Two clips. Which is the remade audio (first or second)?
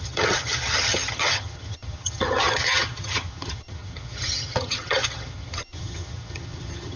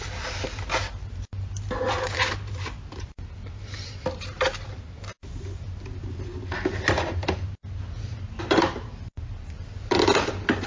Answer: first